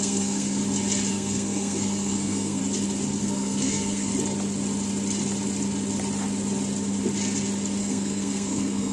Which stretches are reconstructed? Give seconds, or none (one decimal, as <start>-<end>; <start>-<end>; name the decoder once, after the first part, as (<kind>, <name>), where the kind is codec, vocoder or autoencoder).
0.0-0.6 (codec, SNAC); 1.1-2.6; 3.2-4.1; 7.8-8.9